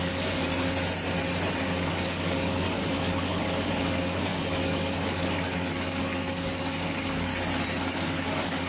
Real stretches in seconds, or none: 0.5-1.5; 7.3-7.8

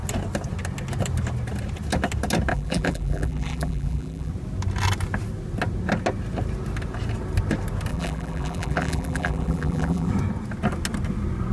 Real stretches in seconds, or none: 0.0-2.5; 4.3-7.9; 10.1-11.5

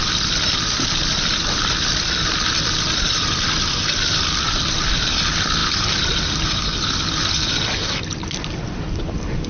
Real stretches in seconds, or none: 0.0-9.5